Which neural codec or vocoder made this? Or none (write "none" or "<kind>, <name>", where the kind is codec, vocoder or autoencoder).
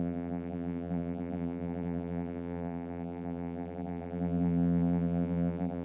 vocoder, BigVGAN v2